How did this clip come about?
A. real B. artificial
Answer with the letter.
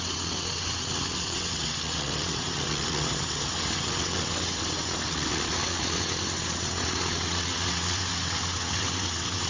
B